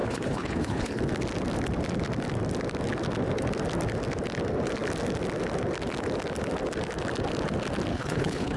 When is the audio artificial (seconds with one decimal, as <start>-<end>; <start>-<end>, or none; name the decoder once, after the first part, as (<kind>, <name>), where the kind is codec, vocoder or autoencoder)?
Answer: 0.0-1.0 (codec, HILCodec); 7.9-8.6